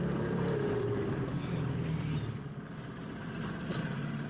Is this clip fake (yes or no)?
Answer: no